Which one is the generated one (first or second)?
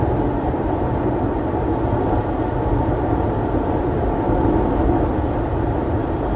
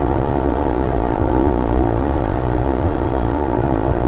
second